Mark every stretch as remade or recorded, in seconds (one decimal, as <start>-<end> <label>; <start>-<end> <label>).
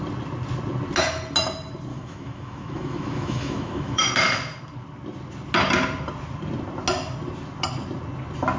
0.0-1.9 recorded; 1.9-4.0 remade; 4.0-8.6 recorded